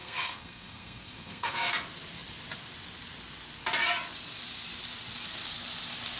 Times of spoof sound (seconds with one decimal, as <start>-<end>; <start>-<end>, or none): 0.0-1.7

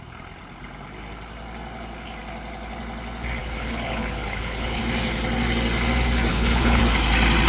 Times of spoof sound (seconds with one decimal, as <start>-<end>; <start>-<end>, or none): 3.4-4.8; 6.3-6.8

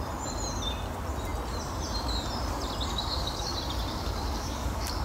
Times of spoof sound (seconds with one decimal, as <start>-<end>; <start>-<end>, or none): 2.9-3.5; 3.9-5.0

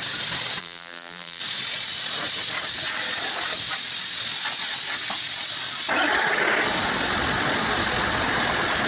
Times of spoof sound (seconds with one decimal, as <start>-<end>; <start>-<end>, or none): 0.6-1.4

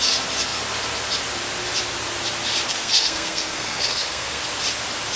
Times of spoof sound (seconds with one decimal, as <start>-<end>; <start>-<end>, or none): 2.7-4.4

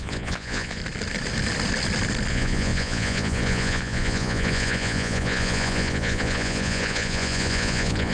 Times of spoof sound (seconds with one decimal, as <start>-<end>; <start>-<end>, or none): 0.0-0.8; 2.3-8.1

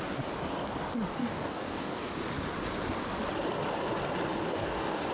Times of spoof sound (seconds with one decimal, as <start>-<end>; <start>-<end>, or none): 1.2-2.0; 4.4-5.1